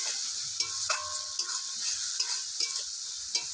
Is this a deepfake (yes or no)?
no